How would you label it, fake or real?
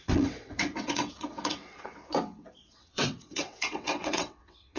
fake